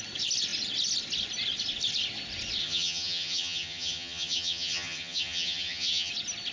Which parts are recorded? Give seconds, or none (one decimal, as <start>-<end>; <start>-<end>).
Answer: 0.0-2.6; 6.1-6.5